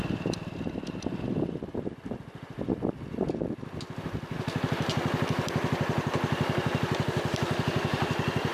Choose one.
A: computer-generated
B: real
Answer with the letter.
B